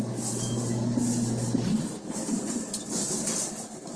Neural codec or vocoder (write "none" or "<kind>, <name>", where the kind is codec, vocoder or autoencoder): none